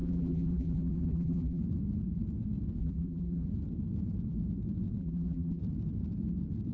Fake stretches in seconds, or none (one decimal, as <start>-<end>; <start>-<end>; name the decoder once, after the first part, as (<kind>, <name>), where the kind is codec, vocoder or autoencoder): 0.0-1.6 (vocoder, BigVGAN v2); 2.8-3.5; 5.0-5.6